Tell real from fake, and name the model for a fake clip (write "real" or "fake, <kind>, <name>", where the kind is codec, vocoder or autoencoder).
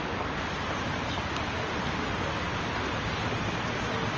real